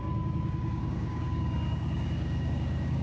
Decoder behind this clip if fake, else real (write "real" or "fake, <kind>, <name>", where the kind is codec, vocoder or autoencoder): fake, codec, DAC